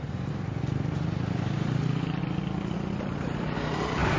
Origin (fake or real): real